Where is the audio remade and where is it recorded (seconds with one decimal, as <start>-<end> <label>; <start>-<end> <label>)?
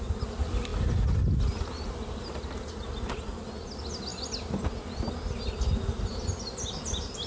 0.0-7.3 recorded